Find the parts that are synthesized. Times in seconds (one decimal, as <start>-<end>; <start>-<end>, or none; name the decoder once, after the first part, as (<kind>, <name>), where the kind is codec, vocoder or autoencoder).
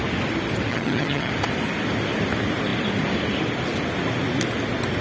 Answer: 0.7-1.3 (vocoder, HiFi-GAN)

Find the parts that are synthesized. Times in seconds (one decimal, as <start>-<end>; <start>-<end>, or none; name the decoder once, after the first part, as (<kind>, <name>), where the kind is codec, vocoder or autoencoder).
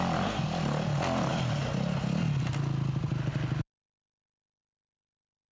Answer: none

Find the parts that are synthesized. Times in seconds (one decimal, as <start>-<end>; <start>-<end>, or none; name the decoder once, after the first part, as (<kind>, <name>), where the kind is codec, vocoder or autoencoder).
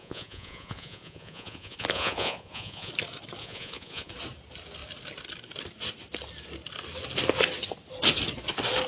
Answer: 0.0-2.9 (vocoder, Vocos); 3.4-4.1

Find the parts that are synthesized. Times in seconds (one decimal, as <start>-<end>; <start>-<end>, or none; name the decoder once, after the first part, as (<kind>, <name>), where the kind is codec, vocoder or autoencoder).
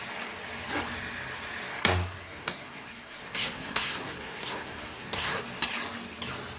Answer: 1.7-5.4 (codec, SNAC)